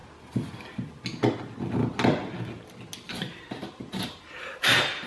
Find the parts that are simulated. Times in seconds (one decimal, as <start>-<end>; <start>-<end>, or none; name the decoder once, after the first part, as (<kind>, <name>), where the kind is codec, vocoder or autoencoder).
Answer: 3.1-5.1 (vocoder, BigVGAN v2)